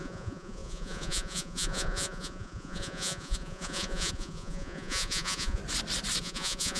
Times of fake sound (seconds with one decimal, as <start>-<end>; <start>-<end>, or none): 0.0-5.6; 6.2-6.8